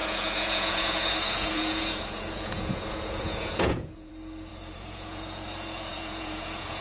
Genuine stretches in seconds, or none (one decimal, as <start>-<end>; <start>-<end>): 4.1-4.5

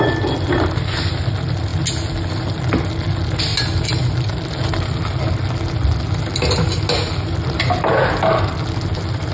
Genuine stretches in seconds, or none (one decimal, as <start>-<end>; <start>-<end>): 0.0-9.3